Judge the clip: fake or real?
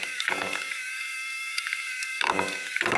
fake